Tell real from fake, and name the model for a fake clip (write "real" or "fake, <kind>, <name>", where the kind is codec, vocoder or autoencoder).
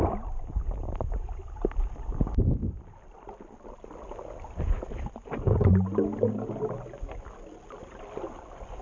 real